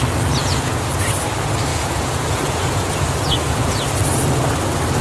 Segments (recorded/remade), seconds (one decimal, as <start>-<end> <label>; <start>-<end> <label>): 0.0-0.4 recorded; 0.4-0.9 remade; 0.9-1.7 recorded; 1.7-3.7 remade; 3.7-5.0 recorded